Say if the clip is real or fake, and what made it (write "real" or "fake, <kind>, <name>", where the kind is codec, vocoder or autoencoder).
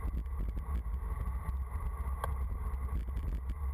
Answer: real